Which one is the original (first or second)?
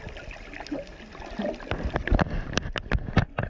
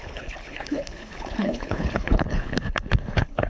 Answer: first